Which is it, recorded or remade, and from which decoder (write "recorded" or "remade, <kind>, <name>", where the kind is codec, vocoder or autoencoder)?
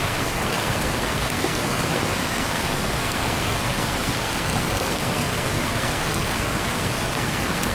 remade, codec, SNAC